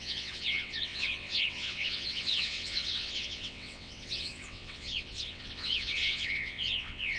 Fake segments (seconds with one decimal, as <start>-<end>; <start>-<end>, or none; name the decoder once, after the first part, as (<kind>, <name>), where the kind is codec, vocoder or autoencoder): 0.0-7.2 (vocoder, WaveNeXt)

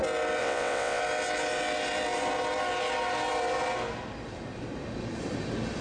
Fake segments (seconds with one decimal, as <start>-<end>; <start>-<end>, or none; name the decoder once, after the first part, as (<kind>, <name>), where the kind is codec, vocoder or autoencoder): 0.4-1.0 (vocoder, WaveNeXt)